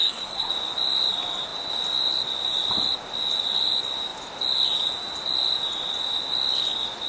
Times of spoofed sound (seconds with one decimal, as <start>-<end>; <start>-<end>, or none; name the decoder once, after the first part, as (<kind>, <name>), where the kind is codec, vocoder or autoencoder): 0.0-0.5 (codec, SNAC)